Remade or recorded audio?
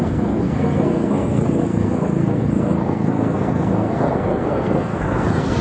remade